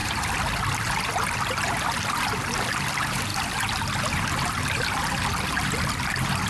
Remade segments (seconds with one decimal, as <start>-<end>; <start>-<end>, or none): 0.0-2.9